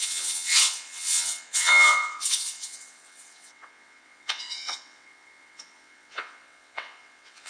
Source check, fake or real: fake